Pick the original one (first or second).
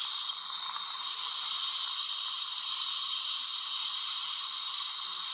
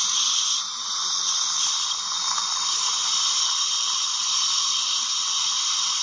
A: second